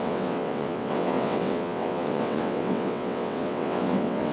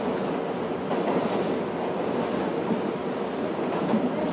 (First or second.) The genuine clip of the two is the second